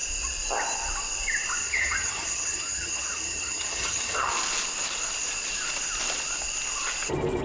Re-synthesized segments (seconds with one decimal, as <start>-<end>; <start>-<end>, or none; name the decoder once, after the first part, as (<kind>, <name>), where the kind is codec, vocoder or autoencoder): 1.6-4.3 (vocoder, HiFi-GAN)